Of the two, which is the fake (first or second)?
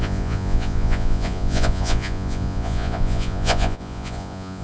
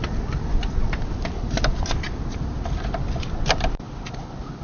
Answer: first